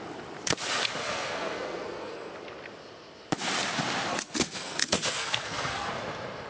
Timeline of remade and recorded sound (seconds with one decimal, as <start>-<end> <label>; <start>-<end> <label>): 0.0-1.0 recorded; 1.0-2.3 remade; 2.3-4.1 recorded; 4.1-5.9 remade; 5.9-6.5 recorded